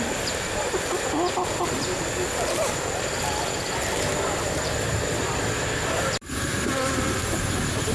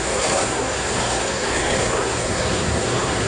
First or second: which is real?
first